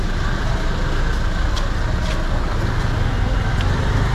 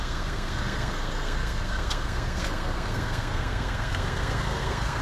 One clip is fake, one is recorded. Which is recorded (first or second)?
first